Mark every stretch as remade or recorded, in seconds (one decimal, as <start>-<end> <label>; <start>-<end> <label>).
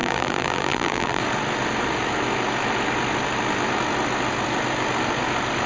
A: 0.0-1.2 remade; 1.2-5.7 recorded